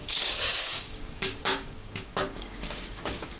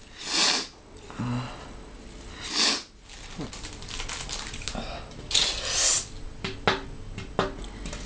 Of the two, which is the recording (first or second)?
second